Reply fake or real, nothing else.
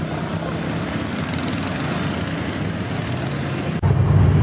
real